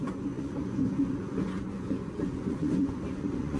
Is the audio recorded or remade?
remade